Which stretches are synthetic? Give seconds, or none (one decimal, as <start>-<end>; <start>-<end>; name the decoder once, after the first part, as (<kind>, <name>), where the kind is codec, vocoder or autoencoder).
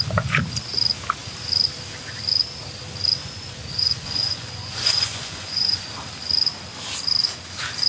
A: 3.2-5.9 (vocoder, Vocos)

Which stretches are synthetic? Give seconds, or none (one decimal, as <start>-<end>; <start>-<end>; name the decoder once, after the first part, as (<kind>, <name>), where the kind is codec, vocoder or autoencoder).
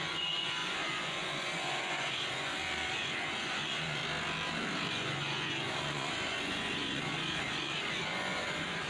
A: 0.0-4.0 (vocoder, Vocos); 4.9-8.9